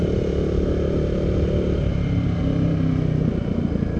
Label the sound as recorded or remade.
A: recorded